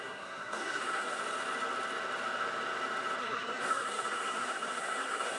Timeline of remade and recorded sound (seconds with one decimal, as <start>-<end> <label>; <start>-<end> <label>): 0.0-1.2 remade; 1.2-3.2 recorded; 3.2-5.4 remade

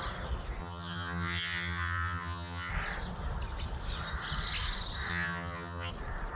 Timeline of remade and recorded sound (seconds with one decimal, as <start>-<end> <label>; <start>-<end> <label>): 0.0-0.6 recorded; 0.6-2.7 remade; 2.7-5.1 recorded; 5.1-5.9 remade; 5.9-6.4 recorded

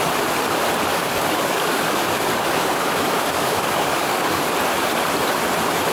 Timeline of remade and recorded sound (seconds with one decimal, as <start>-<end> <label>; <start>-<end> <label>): 0.0-0.9 recorded; 0.9-4.4 remade; 4.4-5.9 recorded

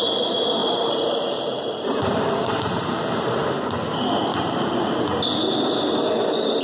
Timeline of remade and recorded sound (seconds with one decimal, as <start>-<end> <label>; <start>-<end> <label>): 0.0-0.6 recorded; 0.6-3.6 remade; 3.6-4.3 recorded; 4.3-5.0 remade; 5.0-6.6 recorded

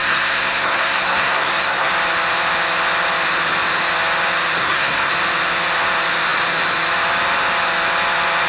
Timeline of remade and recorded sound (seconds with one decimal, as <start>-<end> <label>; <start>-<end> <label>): 0.0-1.9 remade; 1.9-4.6 recorded; 4.6-5.1 remade; 5.1-8.5 recorded